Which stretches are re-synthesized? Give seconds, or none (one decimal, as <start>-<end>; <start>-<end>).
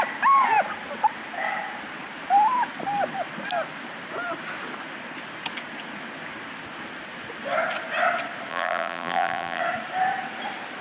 8.5-9.6